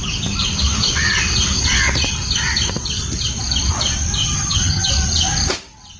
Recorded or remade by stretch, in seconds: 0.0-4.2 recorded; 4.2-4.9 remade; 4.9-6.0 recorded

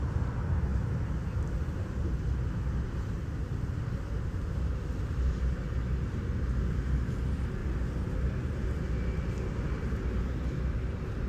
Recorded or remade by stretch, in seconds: 0.0-11.3 recorded

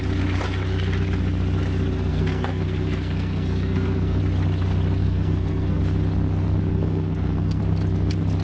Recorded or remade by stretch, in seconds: 0.0-2.1 recorded; 2.1-4.2 remade; 4.2-5.0 recorded; 5.0-5.8 remade; 5.8-6.7 recorded; 6.7-7.6 remade; 7.6-8.4 recorded

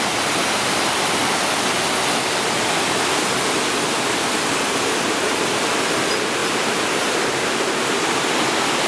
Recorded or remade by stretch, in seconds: 0.0-8.9 recorded

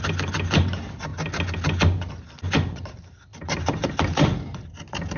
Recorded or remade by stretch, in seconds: 0.0-3.3 recorded; 3.3-3.9 remade; 3.9-5.2 recorded

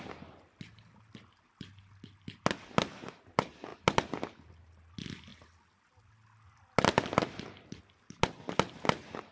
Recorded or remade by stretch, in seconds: 0.0-9.3 recorded

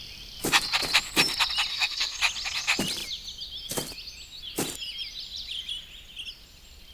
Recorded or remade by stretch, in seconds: 0.0-1.7 recorded; 1.7-2.2 remade; 2.2-6.9 recorded

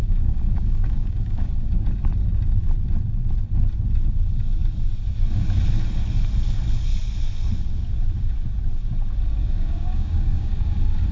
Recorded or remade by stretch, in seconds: 0.0-1.5 remade; 1.5-9.4 recorded; 9.4-10.5 remade; 10.5-11.1 recorded